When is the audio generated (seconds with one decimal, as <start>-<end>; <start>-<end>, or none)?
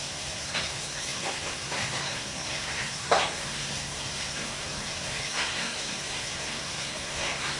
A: 0.0-7.6